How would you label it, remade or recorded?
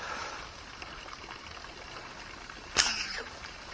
remade